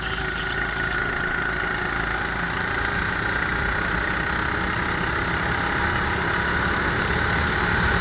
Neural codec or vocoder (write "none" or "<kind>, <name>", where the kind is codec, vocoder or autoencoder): none